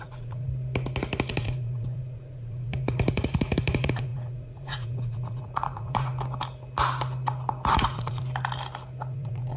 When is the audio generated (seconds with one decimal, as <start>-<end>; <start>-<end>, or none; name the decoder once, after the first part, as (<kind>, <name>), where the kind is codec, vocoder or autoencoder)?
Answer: 0.0-0.5 (vocoder, Vocos); 1.3-6.1; 7.7-8.2; 9.1-9.6